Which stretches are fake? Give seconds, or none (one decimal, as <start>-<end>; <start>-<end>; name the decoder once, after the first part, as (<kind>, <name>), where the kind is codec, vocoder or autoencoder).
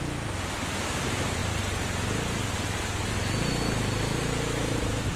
4.1-4.8 (vocoder, BigVGAN v2)